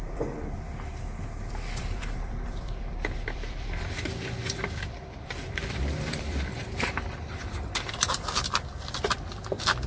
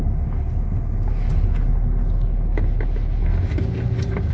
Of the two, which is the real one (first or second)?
second